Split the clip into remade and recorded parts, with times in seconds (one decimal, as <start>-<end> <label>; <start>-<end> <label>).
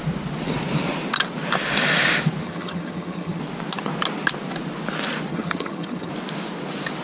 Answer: 0.0-2.4 recorded; 2.4-3.4 remade; 3.4-5.3 recorded; 5.3-6.1 remade; 6.1-7.0 recorded